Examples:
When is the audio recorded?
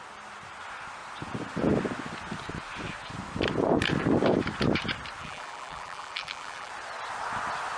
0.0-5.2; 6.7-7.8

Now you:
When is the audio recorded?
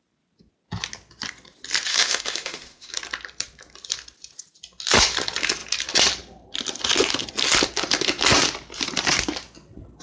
0.0-1.9; 2.9-10.0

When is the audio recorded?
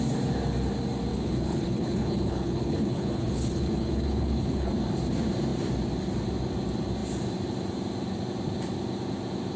0.0-1.1; 4.7-9.6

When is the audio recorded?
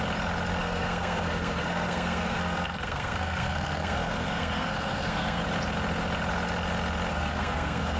0.0-0.6; 5.4-7.1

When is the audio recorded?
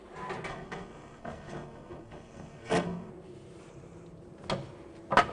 0.0-0.5; 3.1-5.3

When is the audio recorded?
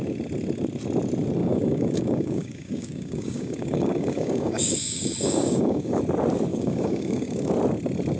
0.0-1.4; 6.0-6.5; 7.5-8.2